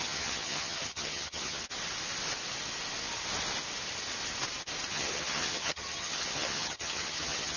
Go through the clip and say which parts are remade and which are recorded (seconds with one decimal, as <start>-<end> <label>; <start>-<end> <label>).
0.0-1.6 remade; 1.6-4.9 recorded; 4.9-7.6 remade

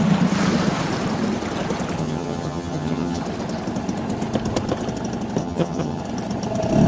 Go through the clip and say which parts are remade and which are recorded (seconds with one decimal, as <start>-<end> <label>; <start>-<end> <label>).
0.0-2.0 recorded; 2.0-3.2 remade; 3.2-5.4 recorded; 5.4-6.0 remade; 6.0-6.9 recorded

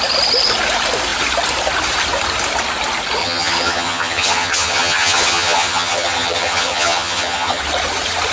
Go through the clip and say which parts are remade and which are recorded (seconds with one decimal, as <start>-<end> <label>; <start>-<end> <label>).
0.0-3.2 recorded; 3.2-7.6 remade; 7.6-8.3 recorded

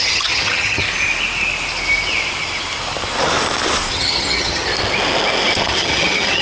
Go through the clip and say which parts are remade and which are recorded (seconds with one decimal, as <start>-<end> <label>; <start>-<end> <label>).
0.0-0.8 remade; 0.8-3.9 recorded; 3.9-4.7 remade; 4.7-5.6 recorded; 5.6-6.4 remade

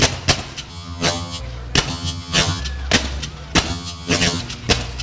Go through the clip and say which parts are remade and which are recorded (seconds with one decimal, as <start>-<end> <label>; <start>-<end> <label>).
0.0-0.7 recorded; 0.7-1.4 remade; 1.4-1.9 recorded; 1.9-2.6 remade; 2.6-3.7 recorded; 3.7-4.4 remade; 4.4-5.0 recorded